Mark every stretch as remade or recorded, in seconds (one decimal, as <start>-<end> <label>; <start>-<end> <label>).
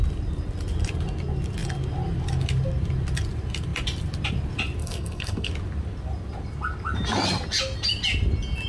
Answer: 0.0-4.8 recorded; 4.8-5.5 remade; 5.5-8.7 recorded